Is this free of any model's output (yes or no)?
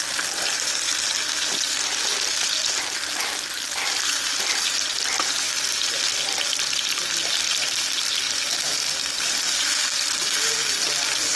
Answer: yes